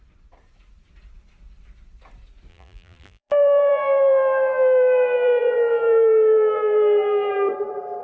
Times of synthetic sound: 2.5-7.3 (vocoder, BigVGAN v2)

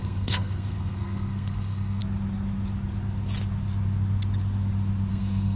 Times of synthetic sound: 0.0-2.0 (codec, SNAC); 5.1-5.6

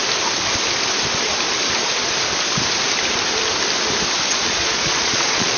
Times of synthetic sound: 4.3-5.6 (vocoder, Vocos)

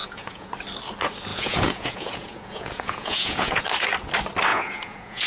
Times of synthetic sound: 0.0-0.5 (vocoder, Vocos); 1.3-3.6; 4.5-5.3

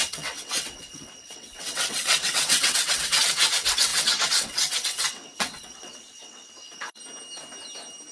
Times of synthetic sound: 0.0-7.0 (vocoder, WaveNeXt)

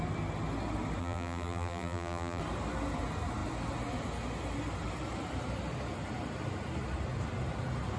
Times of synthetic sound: 1.0-2.4 (vocoder, BigVGAN v2)

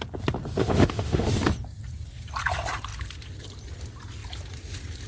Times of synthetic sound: 0.6-1.3 (autoencoder, DAC-VAE)

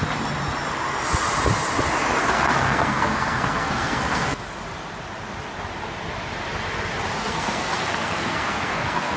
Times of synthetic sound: 2.2-4.4 (codec, SNAC); 7.2-9.2